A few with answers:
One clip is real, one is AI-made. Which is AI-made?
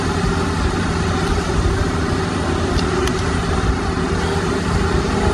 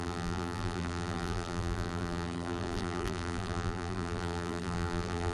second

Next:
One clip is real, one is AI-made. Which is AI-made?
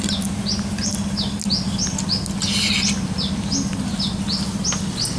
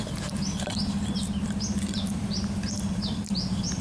second